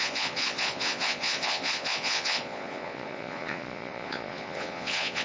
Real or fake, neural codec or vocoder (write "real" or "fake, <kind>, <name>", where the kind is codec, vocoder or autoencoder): fake, vocoder, Vocos